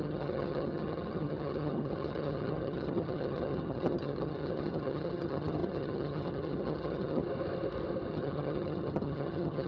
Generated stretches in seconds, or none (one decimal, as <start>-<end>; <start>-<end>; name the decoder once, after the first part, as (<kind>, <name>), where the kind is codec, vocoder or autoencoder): 0.0-7.2 (vocoder, HiFi-GAN); 8.1-9.7